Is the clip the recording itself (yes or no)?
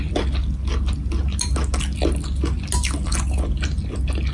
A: yes